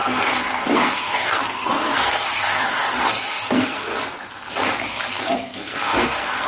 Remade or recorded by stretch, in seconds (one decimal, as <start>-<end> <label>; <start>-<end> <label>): 0.0-3.9 remade; 3.9-5.1 recorded; 5.1-6.5 remade